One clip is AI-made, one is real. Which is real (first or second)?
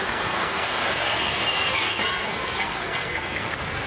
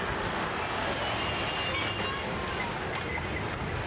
second